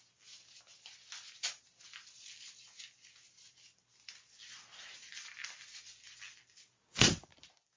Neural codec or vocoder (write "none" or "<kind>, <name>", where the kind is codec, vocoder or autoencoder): none